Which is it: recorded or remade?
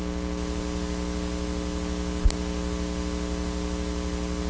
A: recorded